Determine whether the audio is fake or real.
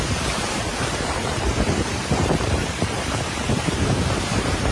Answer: fake